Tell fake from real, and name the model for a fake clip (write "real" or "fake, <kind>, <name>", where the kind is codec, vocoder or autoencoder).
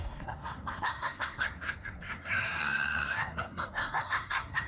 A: fake, codec, SNAC